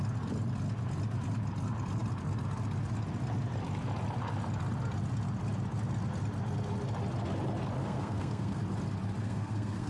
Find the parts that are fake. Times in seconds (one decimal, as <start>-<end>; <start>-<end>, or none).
7.8-8.6; 9.2-9.9